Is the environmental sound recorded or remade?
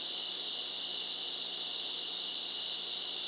recorded